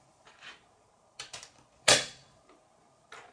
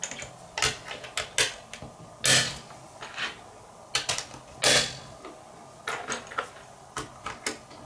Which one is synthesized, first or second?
first